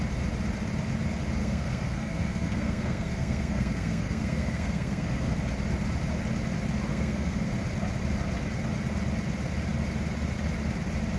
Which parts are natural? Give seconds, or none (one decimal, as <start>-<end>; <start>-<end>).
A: 0.0-1.4; 5.3-6.9; 7.5-11.2